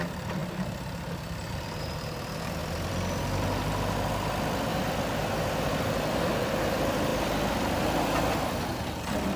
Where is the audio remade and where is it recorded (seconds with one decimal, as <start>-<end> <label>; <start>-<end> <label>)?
0.0-9.4 remade